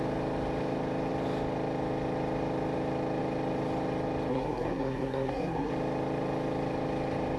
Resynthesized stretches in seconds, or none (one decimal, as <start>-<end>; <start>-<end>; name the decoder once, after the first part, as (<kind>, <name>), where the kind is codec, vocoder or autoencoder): 4.3-5.7 (codec, SNAC)